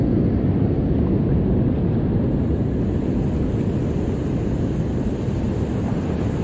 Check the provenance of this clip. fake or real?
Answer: real